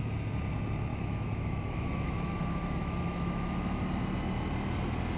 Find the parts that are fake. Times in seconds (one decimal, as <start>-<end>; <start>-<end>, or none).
0.9-3.8